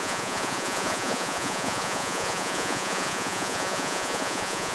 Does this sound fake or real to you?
fake